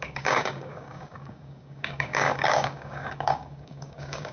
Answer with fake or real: fake